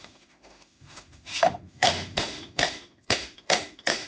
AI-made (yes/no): yes